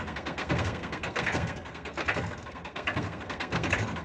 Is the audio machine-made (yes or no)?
yes